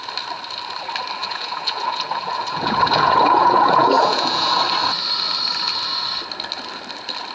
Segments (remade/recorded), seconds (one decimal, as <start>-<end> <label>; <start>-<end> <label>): 0.0-1.2 recorded; 1.2-4.6 remade; 4.6-7.3 recorded